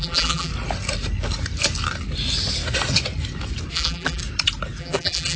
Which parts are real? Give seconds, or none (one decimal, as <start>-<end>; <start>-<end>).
0.5-3.7; 4.2-4.8